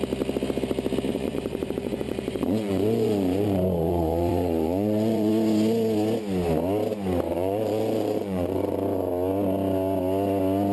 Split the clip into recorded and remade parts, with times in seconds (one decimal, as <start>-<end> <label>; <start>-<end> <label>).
0.0-1.1 recorded; 1.1-5.3 remade; 5.3-7.3 recorded; 7.3-9.1 remade; 9.1-10.7 recorded